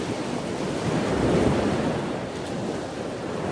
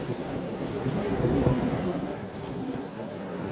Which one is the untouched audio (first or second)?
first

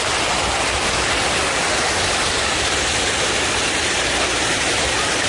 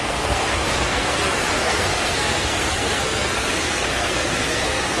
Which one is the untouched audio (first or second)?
first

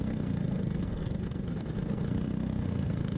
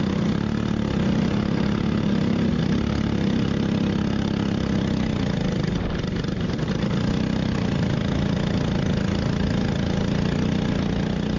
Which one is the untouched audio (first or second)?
second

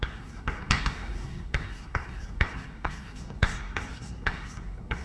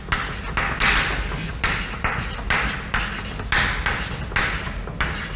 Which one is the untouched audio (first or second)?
second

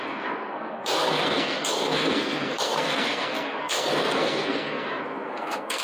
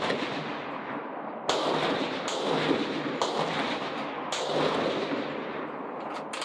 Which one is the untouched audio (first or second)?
second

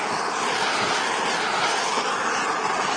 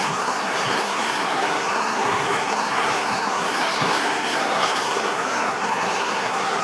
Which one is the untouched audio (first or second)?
first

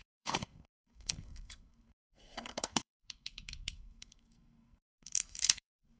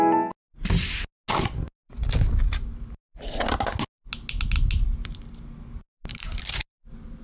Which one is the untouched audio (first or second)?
second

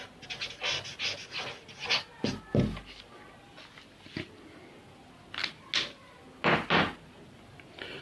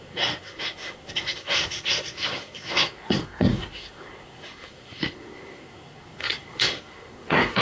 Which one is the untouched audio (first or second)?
first